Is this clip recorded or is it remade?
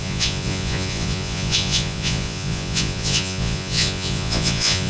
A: remade